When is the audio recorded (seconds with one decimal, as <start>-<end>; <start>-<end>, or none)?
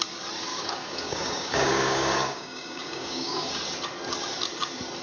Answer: 0.0-0.5; 3.5-5.0